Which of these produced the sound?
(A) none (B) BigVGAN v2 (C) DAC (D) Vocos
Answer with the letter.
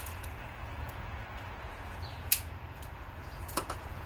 D